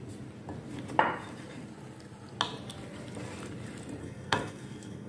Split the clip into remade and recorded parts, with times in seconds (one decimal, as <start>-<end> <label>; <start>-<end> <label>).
0.0-4.0 recorded; 4.0-5.1 remade